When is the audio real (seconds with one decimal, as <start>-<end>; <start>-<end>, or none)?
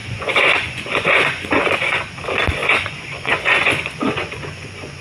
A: 2.0-2.6